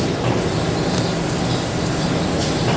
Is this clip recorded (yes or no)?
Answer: yes